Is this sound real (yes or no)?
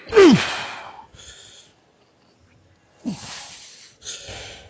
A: yes